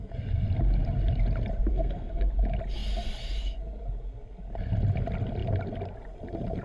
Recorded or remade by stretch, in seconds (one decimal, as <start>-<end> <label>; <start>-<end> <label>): 0.0-1.7 recorded; 1.7-2.3 remade; 2.3-6.6 recorded